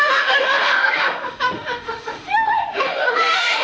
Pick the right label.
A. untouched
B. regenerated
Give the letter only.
B